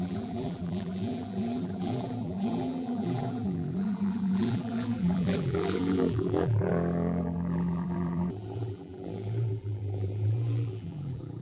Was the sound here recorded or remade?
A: remade